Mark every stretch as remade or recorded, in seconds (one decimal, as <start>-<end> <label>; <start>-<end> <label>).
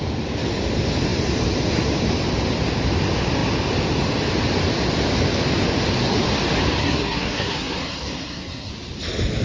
0.0-6.8 recorded; 6.8-8.7 remade; 8.7-9.4 recorded